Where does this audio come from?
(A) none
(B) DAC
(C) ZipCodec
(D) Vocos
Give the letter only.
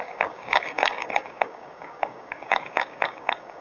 B